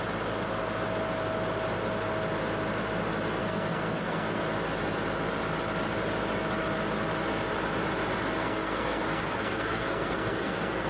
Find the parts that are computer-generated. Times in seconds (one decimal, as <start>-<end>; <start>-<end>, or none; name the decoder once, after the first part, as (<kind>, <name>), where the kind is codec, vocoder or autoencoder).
3.4-4.4 (codec, SNAC); 8.4-10.9